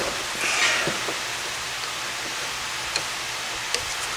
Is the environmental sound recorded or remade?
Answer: recorded